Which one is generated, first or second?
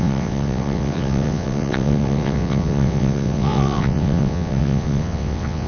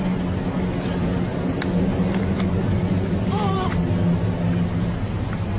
first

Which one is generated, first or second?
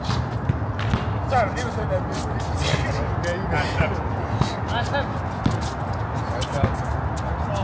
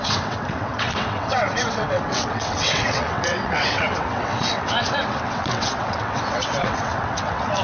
second